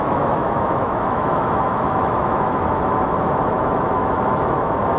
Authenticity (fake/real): fake